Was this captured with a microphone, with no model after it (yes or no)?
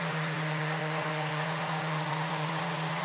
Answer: no